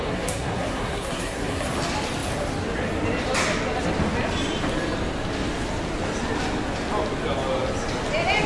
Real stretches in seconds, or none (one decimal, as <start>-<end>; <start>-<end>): 1.7-8.5